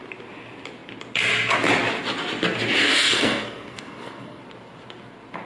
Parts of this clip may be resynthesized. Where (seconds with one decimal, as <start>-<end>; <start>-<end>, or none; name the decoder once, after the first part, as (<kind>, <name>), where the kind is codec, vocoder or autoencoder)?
2.8-4.4 (codec, SNAC)